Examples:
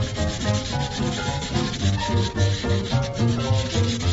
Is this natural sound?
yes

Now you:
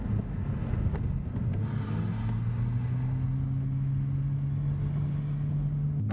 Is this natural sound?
yes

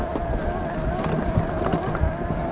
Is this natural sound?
yes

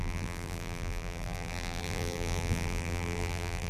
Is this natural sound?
no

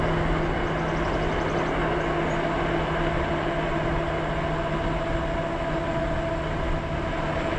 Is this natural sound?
yes